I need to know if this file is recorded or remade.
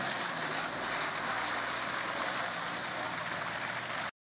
recorded